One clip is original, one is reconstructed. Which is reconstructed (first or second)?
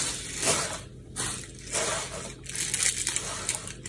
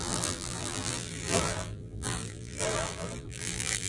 second